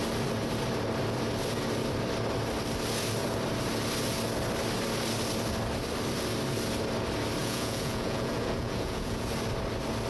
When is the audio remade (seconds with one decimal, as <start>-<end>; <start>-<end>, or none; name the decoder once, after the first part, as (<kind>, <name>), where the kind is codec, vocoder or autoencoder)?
7.4-9.3 (vocoder, Vocos)